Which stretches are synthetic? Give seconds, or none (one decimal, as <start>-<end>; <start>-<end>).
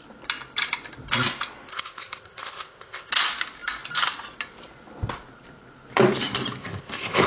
1.7-3.1; 6.6-7.3